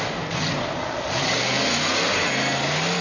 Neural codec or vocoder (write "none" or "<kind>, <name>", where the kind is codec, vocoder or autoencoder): none